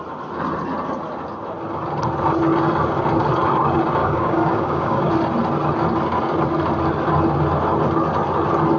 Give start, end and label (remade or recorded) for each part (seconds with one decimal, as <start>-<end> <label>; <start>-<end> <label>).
0.0-4.0 recorded; 4.0-5.1 remade; 5.1-8.8 recorded